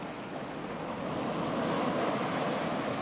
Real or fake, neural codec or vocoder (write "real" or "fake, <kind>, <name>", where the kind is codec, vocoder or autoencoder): real